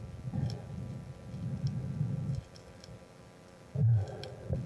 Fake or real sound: real